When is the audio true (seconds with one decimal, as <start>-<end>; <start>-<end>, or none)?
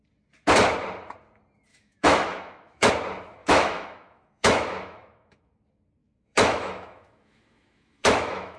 0.0-1.7; 2.9-3.4; 5.5-6.0